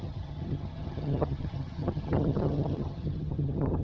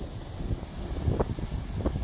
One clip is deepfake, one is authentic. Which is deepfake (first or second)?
first